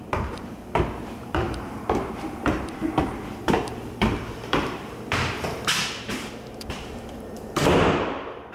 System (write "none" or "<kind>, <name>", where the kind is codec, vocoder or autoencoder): vocoder, BigVGAN v2